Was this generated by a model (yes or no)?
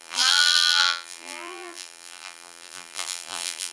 yes